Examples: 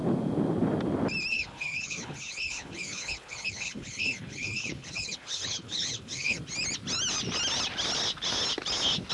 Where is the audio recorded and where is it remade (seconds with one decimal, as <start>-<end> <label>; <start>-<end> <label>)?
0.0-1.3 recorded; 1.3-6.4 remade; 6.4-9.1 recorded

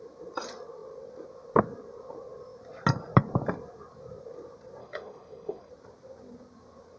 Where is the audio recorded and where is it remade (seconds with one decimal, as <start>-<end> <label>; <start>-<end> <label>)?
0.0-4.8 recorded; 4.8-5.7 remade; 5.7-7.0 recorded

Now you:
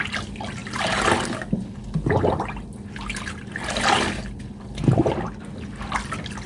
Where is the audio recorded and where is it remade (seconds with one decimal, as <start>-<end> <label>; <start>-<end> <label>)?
0.0-6.5 recorded